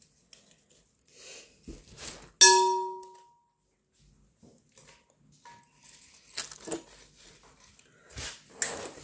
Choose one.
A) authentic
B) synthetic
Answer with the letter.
A